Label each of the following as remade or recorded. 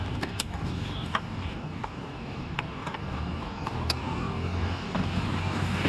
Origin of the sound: remade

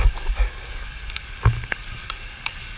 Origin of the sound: remade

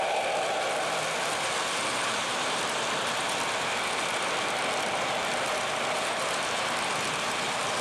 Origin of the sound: recorded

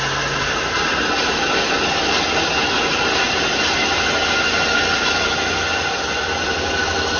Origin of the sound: recorded